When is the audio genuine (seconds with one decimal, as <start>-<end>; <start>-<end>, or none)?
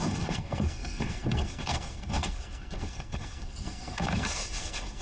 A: none